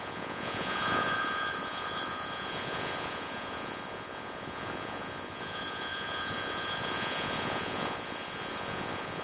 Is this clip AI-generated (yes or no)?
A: yes